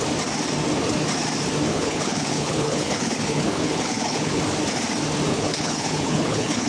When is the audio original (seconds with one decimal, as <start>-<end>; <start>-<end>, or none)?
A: 0.0-1.7; 4.4-5.3